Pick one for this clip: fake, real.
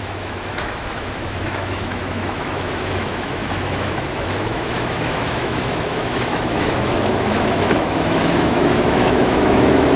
fake